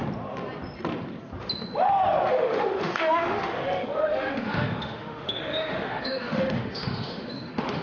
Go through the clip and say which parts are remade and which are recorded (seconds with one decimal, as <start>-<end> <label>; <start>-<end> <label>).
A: 0.0-2.3 recorded; 2.3-7.8 remade